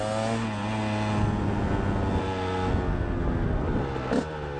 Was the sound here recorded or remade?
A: recorded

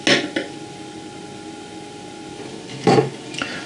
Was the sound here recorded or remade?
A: recorded